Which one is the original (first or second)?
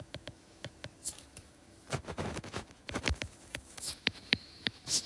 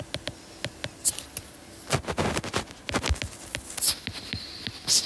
second